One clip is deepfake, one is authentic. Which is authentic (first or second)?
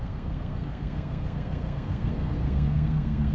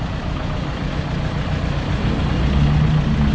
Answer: second